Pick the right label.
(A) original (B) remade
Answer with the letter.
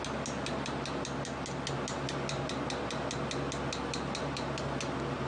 A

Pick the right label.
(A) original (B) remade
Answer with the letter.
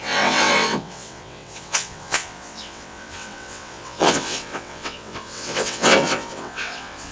B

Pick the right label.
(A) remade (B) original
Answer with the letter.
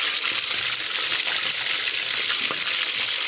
B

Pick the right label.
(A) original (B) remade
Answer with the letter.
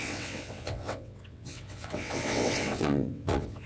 B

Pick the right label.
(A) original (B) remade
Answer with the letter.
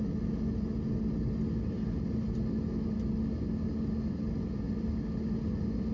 A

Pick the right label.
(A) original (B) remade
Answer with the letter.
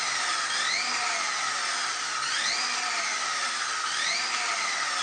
A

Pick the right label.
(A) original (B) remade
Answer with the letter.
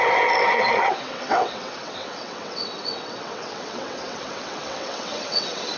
B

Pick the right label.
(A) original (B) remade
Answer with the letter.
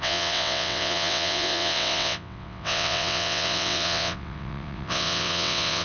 B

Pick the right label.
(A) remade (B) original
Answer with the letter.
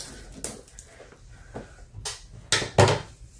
B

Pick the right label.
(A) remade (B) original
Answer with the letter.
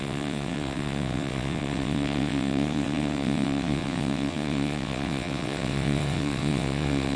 A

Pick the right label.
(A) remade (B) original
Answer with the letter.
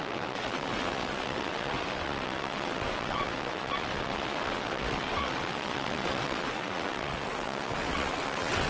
A